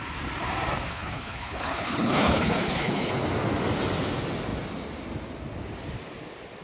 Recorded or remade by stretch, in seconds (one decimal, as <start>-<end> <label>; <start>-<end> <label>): 0.0-0.9 recorded; 0.9-3.1 remade; 3.1-6.6 recorded